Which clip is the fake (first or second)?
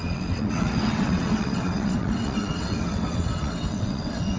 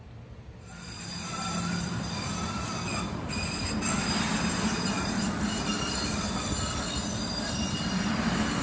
first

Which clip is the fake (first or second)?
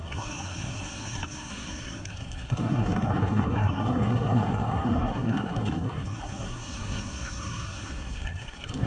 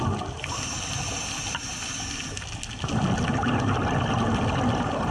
first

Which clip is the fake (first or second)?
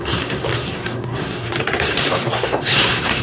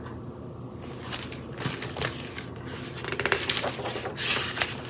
first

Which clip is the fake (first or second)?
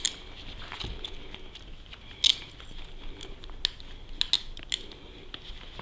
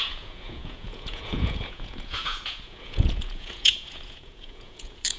second